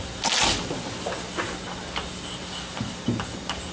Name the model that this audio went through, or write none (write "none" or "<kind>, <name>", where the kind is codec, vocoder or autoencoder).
none